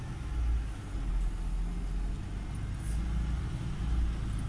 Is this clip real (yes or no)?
yes